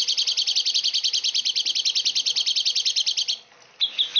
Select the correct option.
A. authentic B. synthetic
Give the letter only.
A